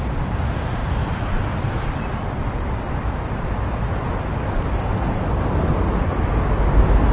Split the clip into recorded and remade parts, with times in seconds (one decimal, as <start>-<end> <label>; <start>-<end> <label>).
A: 0.0-0.8 recorded; 0.8-2.8 remade; 2.8-3.8 recorded; 3.8-4.9 remade; 4.9-7.1 recorded